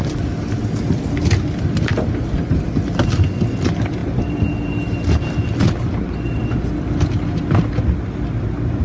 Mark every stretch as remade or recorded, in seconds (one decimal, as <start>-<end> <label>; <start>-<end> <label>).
0.0-8.8 recorded